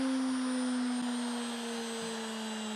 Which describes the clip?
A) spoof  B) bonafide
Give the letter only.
B